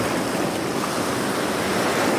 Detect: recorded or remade recorded